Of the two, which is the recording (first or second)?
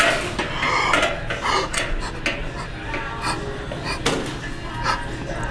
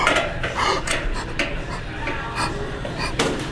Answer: first